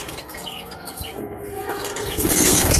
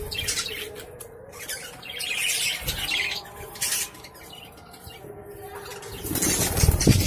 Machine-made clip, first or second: first